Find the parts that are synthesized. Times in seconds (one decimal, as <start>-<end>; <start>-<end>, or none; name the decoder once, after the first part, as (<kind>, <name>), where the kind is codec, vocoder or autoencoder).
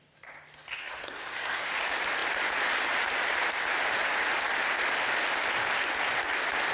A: 0.8-1.7 (codec, SNAC)